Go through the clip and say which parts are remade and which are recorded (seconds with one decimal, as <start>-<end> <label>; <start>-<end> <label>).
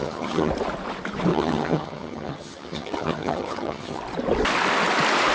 0.0-0.5 remade; 0.5-1.3 recorded; 1.3-4.0 remade; 4.0-5.3 recorded